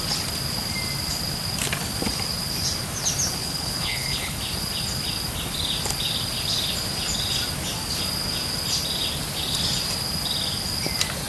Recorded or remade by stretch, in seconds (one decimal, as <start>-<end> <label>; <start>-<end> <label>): 0.0-3.4 recorded; 3.4-4.4 remade; 4.4-11.3 recorded